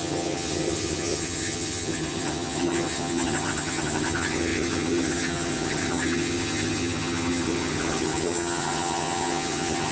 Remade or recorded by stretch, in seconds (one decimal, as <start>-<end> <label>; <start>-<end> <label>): 0.0-9.9 remade